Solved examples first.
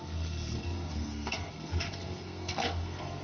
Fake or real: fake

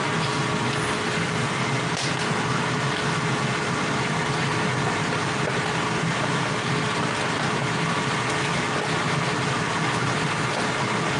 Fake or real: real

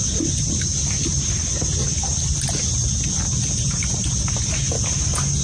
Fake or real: real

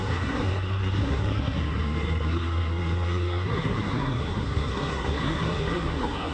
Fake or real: fake